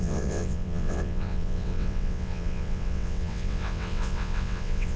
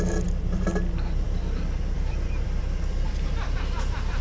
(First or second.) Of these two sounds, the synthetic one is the first